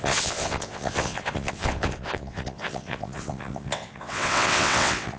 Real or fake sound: fake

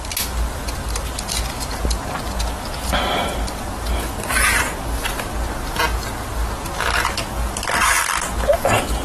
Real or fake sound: real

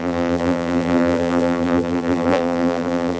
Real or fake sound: fake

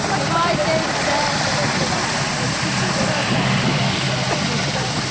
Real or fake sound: real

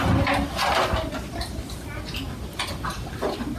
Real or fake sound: real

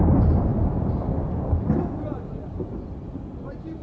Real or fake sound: real